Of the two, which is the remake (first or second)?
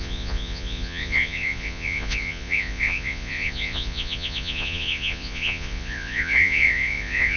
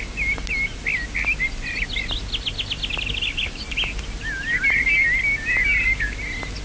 first